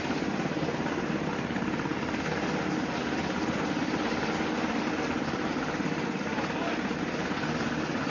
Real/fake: real